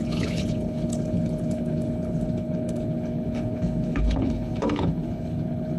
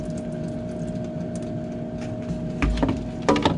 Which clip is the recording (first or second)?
second